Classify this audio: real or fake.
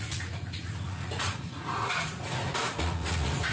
fake